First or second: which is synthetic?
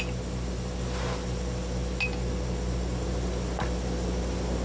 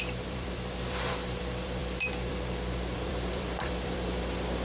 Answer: second